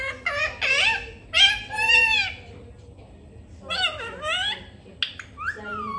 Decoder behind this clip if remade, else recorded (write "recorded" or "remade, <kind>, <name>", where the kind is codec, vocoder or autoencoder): recorded